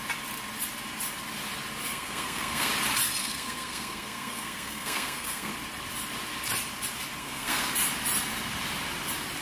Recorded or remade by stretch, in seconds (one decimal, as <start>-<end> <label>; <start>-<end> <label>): 0.0-1.9 recorded; 1.9-2.7 remade; 2.7-3.2 recorded; 3.2-5.5 remade; 5.5-7.2 recorded; 7.2-7.7 remade; 7.7-9.4 recorded